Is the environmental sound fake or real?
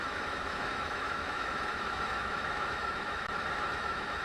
fake